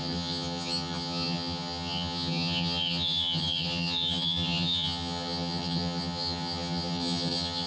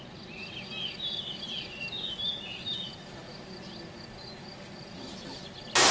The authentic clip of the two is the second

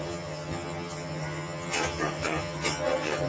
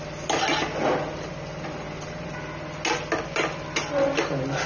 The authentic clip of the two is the second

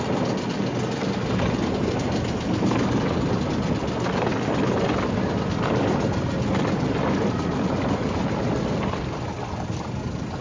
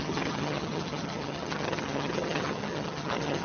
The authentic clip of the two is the first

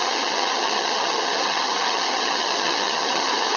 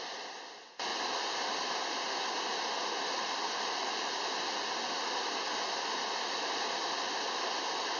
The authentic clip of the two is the second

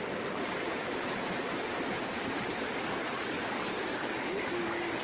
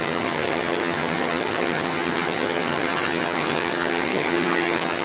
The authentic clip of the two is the first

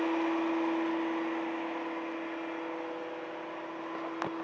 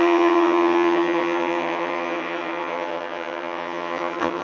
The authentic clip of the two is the first